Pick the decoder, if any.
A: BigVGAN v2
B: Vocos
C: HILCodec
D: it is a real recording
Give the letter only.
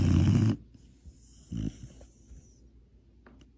D